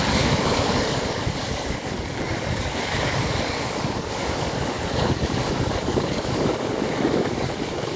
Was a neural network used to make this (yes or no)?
yes